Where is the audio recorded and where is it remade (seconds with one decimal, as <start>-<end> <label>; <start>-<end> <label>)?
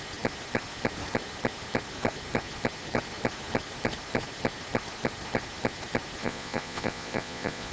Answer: 0.0-6.2 recorded; 6.2-7.7 remade